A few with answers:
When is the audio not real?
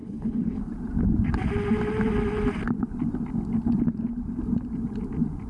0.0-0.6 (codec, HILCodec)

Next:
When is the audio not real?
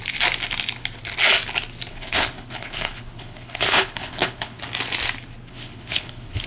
1.9-4.6 (codec, HILCodec); 5.5-6.5